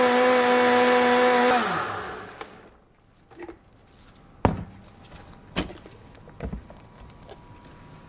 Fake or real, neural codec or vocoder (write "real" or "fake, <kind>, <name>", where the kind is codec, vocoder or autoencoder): real